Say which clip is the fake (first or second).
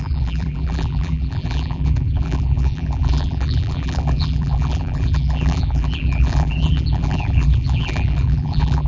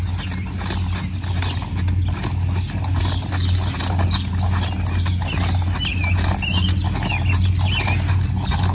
first